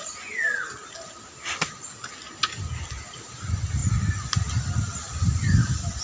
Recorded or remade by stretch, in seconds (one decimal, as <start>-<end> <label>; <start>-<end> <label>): 0.0-6.0 recorded